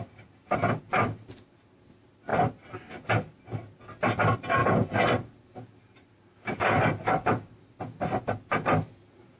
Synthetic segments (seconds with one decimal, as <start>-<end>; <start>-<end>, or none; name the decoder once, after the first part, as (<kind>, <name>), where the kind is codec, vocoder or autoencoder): none

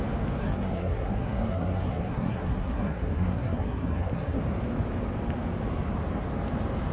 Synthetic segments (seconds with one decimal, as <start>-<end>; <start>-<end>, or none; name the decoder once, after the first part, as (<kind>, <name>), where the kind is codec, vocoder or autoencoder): 0.4-4.4 (codec, SNAC)

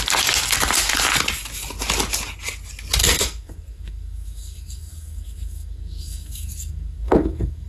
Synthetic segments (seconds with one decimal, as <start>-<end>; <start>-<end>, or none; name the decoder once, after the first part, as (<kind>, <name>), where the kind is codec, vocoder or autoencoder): 3.0-7.7 (codec, SNAC)

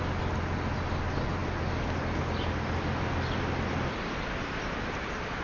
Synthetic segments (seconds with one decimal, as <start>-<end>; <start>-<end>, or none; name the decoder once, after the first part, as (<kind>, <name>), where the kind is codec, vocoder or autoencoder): none

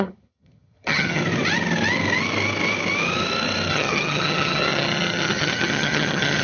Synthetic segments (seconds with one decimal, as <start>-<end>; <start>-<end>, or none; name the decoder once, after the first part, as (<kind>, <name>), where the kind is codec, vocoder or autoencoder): 0.0-1.2 (vocoder, HiFi-GAN); 3.7-6.4

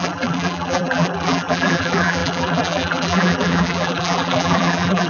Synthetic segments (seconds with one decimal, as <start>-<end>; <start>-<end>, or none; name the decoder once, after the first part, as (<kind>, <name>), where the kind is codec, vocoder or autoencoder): 0.0-5.1 (vocoder, BigVGAN v2)

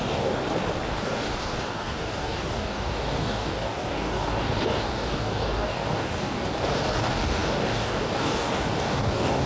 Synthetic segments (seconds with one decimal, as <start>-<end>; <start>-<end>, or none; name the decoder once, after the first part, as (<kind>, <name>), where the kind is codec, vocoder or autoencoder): 0.0-0.4 (codec, DAC); 0.9-9.5